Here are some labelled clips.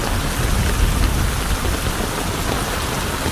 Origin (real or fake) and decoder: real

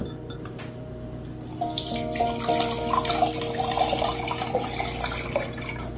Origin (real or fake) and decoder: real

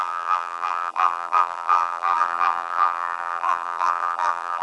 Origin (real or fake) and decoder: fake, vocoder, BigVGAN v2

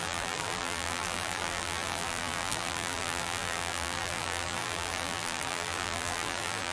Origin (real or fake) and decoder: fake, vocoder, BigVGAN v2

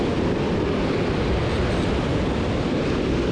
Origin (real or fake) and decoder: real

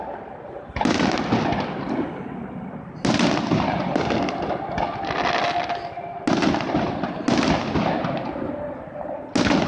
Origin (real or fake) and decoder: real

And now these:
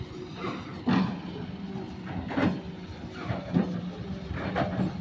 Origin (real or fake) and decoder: real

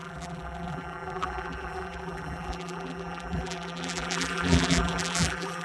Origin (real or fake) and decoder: fake, vocoder, BigVGAN v2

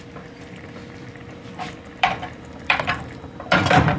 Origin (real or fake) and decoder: fake, vocoder, BigVGAN v2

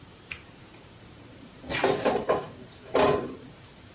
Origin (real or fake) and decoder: fake, vocoder, BigVGAN v2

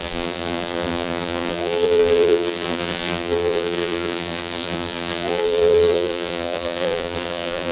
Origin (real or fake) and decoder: fake, vocoder, BigVGAN v2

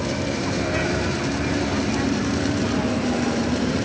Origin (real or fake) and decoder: fake, vocoder, BigVGAN v2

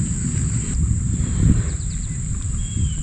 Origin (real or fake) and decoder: fake, vocoder, BigVGAN v2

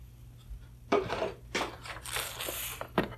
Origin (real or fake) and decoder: real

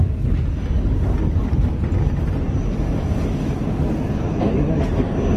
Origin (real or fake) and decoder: real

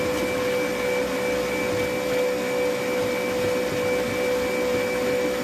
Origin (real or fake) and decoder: real